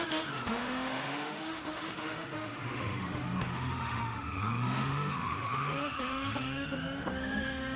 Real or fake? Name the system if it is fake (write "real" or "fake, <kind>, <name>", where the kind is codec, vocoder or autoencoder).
fake, autoencoder, DAC-VAE